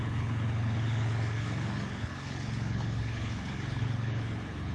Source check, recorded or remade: remade